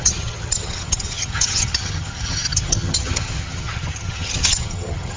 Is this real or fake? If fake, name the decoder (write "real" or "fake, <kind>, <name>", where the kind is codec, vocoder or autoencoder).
fake, vocoder, HiFi-GAN